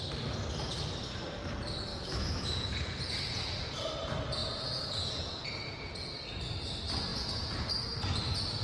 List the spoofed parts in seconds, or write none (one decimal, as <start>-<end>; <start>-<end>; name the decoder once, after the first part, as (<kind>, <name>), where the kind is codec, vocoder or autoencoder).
1.9-3.9 (vocoder, Vocos); 4.4-6.1; 7.1-7.7